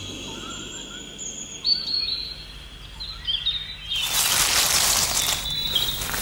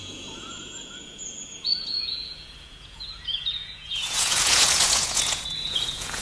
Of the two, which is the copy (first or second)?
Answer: second